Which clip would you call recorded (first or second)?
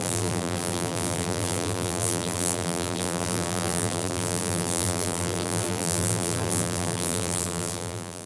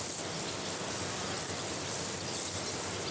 second